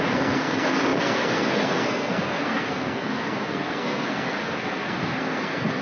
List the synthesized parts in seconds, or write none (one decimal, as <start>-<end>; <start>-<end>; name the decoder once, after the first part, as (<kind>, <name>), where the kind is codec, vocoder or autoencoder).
0.0-5.8 (codec, SNAC)